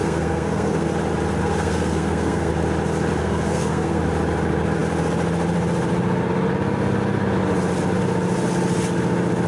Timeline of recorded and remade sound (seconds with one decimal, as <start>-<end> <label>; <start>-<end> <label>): 0.0-0.9 remade; 0.9-1.4 recorded; 1.4-2.5 remade; 2.5-3.2 recorded; 3.2-4.0 remade; 4.0-9.5 recorded